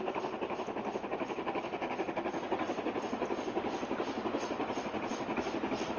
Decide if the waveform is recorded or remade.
recorded